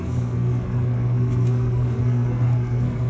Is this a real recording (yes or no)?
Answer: no